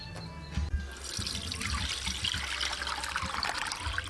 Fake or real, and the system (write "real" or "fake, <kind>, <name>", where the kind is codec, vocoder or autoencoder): real